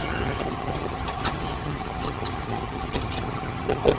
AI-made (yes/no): yes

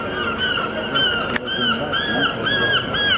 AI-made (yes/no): no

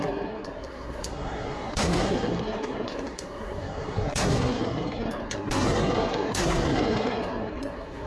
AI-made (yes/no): yes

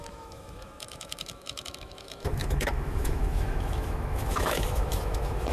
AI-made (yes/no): yes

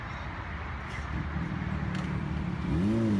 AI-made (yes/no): no